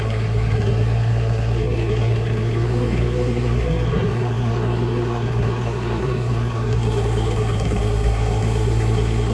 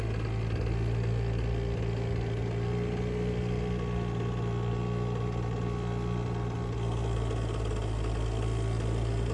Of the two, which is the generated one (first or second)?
first